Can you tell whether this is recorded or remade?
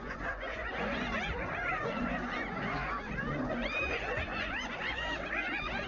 remade